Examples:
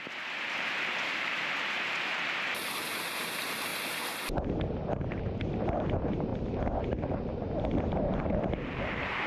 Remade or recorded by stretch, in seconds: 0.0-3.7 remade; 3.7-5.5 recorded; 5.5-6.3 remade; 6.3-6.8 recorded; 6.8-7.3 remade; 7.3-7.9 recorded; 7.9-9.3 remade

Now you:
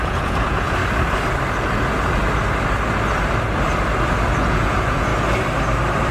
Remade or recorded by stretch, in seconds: 0.0-0.8 remade; 0.8-4.5 recorded; 4.5-5.1 remade; 5.1-6.1 recorded

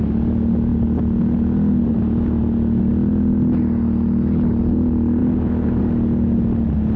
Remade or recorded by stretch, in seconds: 0.0-7.0 recorded